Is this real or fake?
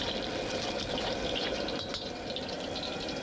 real